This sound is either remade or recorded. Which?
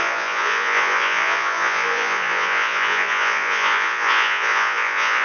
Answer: remade